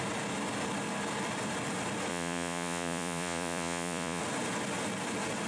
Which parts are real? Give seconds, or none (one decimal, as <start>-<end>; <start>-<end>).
0.0-2.1; 4.2-5.5